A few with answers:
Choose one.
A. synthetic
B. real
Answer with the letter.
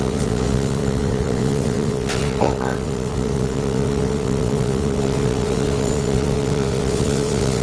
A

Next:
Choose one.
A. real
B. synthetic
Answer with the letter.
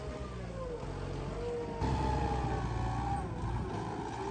A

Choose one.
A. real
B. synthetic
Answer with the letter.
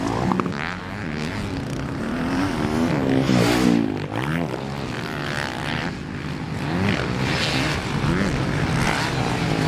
A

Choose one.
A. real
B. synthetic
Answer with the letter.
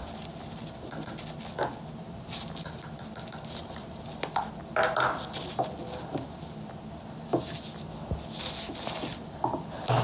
A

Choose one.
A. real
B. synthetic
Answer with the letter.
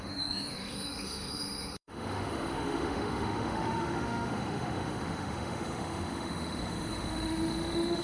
B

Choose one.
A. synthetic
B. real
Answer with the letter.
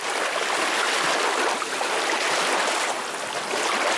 B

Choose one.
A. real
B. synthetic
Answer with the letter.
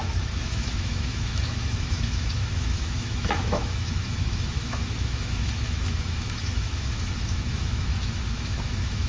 B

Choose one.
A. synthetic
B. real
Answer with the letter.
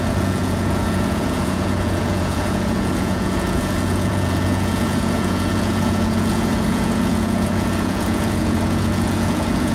A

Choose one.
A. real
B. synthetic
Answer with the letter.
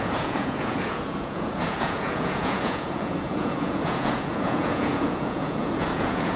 B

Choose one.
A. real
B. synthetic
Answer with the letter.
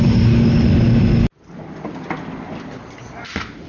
A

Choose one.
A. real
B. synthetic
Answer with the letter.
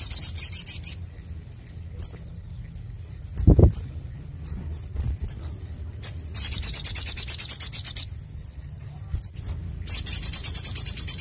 B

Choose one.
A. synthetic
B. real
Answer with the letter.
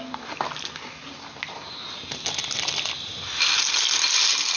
B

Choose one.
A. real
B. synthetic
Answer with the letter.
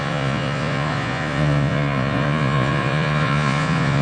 B